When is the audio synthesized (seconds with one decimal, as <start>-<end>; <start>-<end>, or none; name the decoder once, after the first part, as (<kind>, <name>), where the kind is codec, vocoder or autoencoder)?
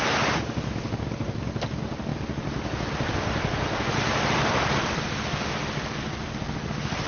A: none